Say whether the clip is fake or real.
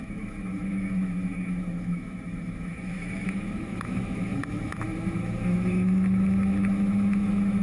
fake